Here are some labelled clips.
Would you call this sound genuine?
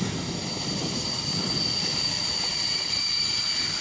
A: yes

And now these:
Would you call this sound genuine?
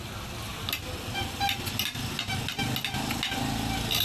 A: yes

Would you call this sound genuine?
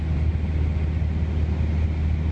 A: yes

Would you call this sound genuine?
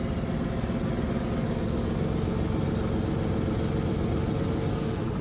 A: yes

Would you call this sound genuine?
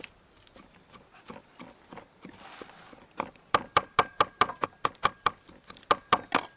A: yes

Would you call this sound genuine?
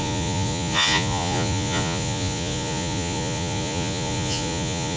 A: no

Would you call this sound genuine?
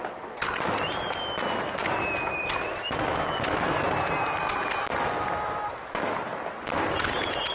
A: yes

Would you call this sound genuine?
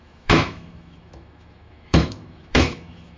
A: no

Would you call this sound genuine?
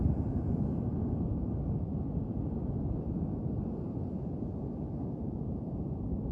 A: yes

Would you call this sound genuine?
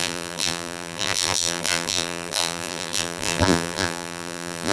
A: no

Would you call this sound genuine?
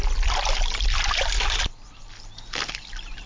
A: yes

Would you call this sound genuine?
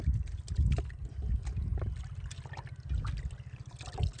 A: yes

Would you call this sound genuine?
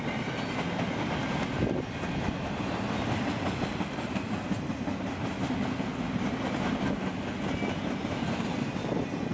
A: yes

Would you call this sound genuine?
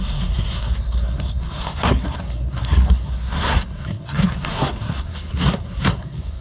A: no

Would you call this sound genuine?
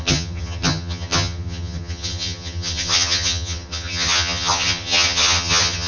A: no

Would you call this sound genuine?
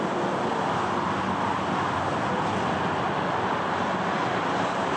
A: yes